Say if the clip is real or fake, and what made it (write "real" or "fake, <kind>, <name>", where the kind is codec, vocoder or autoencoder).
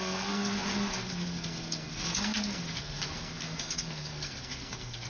fake, codec, SNAC